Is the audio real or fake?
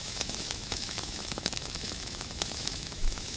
fake